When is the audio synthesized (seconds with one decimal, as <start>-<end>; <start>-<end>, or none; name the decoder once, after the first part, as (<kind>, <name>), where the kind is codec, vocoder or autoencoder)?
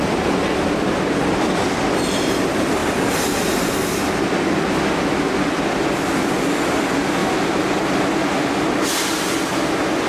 7.2-7.9 (vocoder, BigVGAN v2)